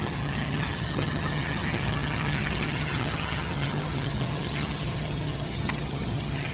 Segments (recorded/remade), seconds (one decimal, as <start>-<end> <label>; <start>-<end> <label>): 0.0-6.5 remade